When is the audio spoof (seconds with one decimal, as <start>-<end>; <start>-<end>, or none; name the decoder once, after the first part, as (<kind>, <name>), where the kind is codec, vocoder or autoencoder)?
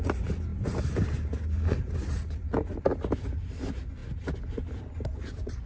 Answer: none